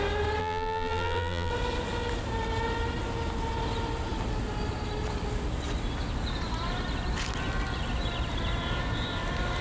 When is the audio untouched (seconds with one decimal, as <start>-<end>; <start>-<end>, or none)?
0.0-0.4; 1.5-9.6